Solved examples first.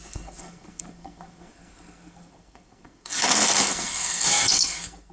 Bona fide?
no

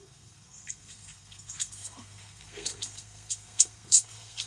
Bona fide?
no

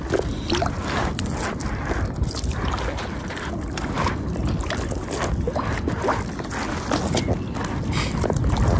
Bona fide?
yes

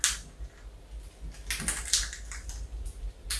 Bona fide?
yes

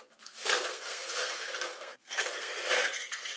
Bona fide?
no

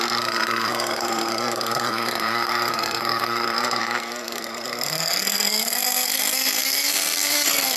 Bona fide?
no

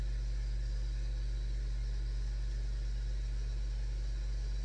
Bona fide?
yes